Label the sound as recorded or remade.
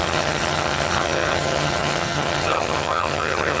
remade